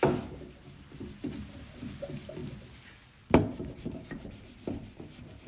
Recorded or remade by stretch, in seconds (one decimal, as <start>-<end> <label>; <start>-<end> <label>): 0.0-5.5 recorded